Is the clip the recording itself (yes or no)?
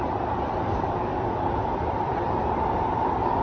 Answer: no